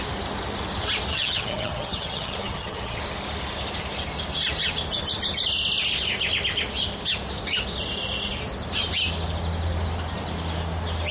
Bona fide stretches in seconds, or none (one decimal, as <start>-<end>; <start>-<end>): 0.0-1.1; 3.0-11.1